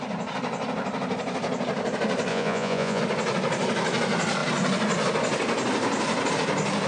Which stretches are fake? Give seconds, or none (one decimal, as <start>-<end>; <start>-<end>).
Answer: 2.3-3.0